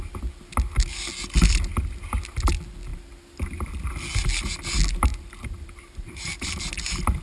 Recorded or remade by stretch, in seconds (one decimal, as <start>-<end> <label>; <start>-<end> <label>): 0.0-2.9 recorded; 2.9-3.9 remade; 3.9-5.1 recorded; 5.1-6.6 remade; 6.6-7.2 recorded